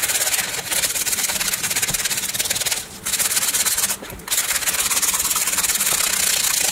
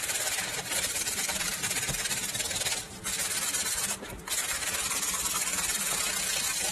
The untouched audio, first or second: first